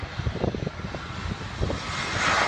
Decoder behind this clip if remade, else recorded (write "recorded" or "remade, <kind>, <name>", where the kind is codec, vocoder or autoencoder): recorded